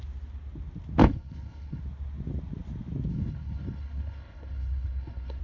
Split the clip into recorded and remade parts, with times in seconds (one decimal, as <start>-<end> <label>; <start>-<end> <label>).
0.0-1.0 recorded; 1.0-1.8 remade; 1.8-3.1 recorded; 3.1-5.4 remade